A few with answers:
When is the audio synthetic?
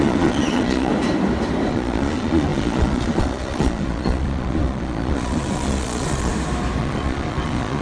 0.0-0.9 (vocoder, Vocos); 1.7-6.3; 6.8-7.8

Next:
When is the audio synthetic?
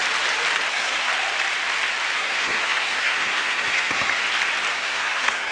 0.7-1.1 (codec, SNAC); 2.2-4.2; 4.7-5.5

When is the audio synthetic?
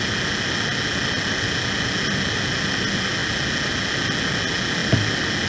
none